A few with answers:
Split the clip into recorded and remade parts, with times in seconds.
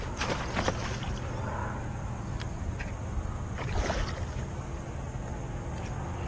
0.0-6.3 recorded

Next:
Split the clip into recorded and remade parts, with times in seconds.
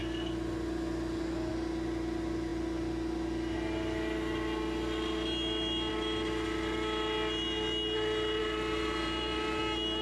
0.0-8.4 recorded; 8.4-9.6 remade; 9.6-10.0 recorded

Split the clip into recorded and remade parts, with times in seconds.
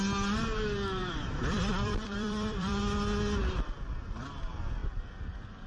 0.0-1.0 recorded; 1.0-2.8 remade; 2.8-4.8 recorded; 4.8-5.7 remade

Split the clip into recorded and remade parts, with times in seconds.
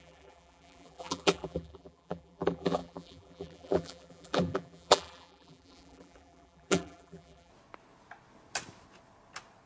0.0-7.5 remade; 7.5-9.7 recorded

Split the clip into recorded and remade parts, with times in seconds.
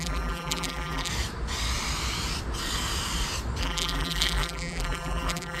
0.0-1.1 remade; 1.1-3.6 recorded; 3.6-5.6 remade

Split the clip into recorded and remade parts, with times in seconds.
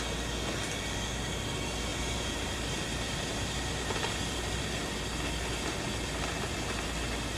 0.0-1.9 recorded; 1.9-4.8 remade; 4.8-7.4 recorded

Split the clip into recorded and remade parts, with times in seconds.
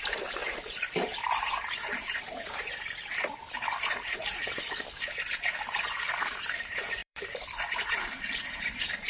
0.0-4.4 remade; 4.4-6.2 recorded; 6.2-9.1 remade